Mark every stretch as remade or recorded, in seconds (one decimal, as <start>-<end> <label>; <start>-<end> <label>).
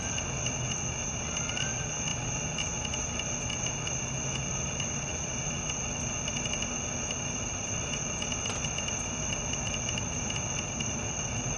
0.0-11.6 recorded